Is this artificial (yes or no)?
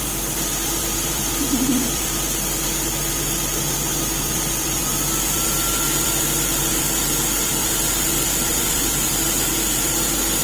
yes